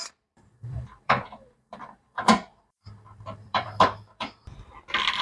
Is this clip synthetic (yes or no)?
yes